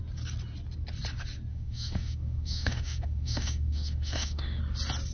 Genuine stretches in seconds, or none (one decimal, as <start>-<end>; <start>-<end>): 0.0-1.5; 4.6-5.1